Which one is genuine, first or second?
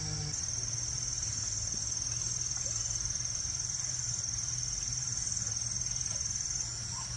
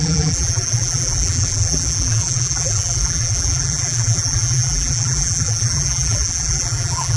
first